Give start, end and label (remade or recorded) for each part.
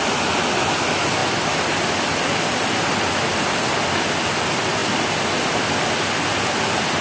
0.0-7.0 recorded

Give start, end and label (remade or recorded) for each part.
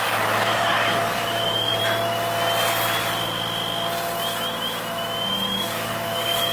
0.0-1.7 remade; 1.7-5.6 recorded; 5.6-6.5 remade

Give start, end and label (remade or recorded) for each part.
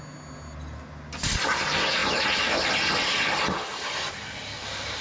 0.0-5.0 recorded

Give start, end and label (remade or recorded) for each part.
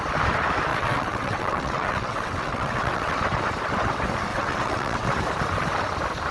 0.0-0.7 recorded; 0.7-3.2 remade; 3.2-4.3 recorded; 4.3-5.1 remade; 5.1-6.3 recorded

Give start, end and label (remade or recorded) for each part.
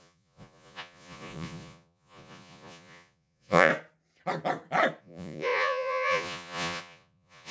0.0-3.7 remade; 3.7-5.0 recorded; 5.0-7.5 remade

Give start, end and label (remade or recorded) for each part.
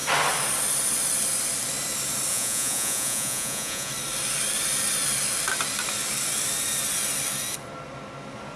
0.0-2.3 recorded; 2.3-3.9 remade; 3.9-8.6 recorded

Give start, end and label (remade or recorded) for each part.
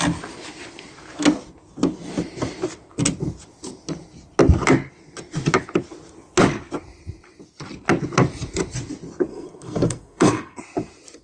0.0-9.3 recorded; 9.3-10.6 remade; 10.6-11.2 recorded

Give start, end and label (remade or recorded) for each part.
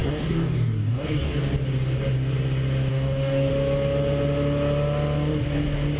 0.0-1.4 remade; 1.4-2.9 recorded; 2.9-3.5 remade; 3.5-6.0 recorded